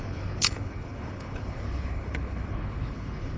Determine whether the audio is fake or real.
fake